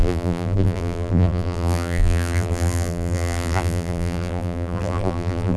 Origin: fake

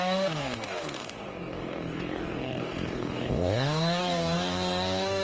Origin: fake